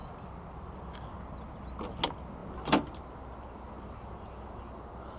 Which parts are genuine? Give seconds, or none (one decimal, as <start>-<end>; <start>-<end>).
0.0-5.2